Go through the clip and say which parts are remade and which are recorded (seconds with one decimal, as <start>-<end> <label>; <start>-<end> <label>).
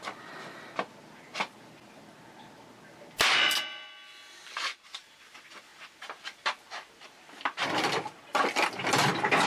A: 0.0-9.5 recorded